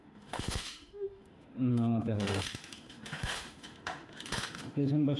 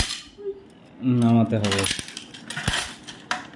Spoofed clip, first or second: first